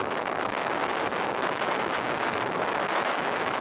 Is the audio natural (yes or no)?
no